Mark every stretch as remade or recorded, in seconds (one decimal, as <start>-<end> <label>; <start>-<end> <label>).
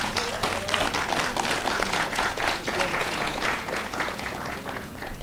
0.0-0.4 remade; 0.4-1.7 recorded; 1.7-5.2 remade